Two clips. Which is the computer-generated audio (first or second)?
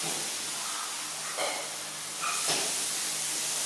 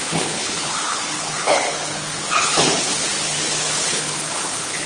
second